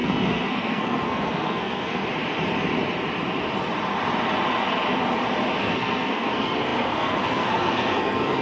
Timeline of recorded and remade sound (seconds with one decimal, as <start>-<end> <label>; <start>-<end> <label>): 0.0-2.0 remade; 2.0-5.6 recorded; 5.6-8.4 remade